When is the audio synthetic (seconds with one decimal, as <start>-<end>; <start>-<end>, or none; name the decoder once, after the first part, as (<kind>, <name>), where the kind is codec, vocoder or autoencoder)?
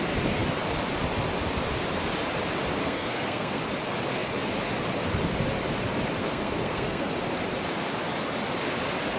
2.8-3.6 (codec, SNAC); 6.2-7.1